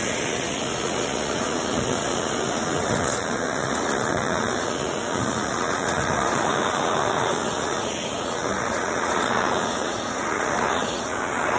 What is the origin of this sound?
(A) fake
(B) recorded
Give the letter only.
A